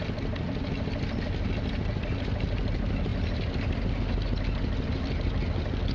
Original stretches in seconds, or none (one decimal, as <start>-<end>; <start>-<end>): 0.0-5.9